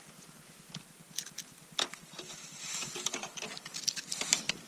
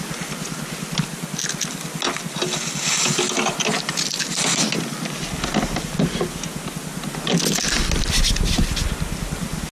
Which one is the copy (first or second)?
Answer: first